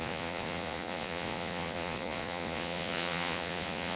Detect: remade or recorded remade